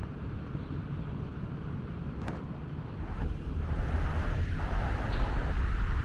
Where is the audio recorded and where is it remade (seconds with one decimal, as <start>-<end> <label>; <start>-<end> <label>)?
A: 0.0-6.0 recorded